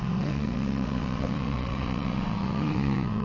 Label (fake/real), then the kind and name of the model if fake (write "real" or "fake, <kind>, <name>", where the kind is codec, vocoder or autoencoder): fake, vocoder, WaveNeXt